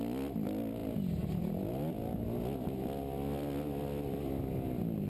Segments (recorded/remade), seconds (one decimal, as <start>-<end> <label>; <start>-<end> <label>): 0.0-5.1 recorded